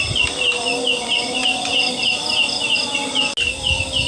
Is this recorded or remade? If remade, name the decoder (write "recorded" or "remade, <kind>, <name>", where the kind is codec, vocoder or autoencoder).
recorded